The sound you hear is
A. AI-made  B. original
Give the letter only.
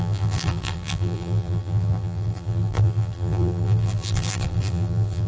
A